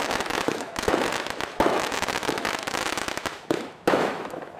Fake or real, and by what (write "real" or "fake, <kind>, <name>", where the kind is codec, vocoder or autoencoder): fake, autoencoder, DAC-VAE